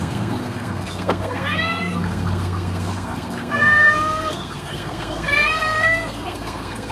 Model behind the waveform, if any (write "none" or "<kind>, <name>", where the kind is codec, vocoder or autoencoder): codec, SNAC